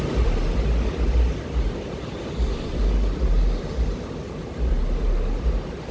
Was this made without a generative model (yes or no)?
yes